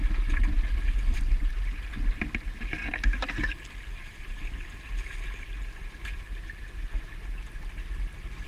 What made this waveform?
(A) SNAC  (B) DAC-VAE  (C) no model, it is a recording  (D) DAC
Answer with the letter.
C